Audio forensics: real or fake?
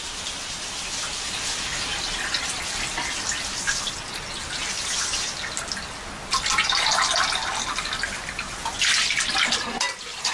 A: real